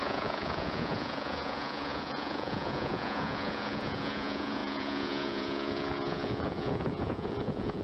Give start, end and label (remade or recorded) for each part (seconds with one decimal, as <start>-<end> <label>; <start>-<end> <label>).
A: 0.0-7.8 remade